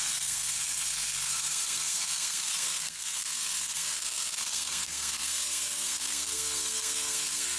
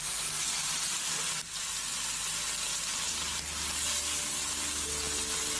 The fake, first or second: first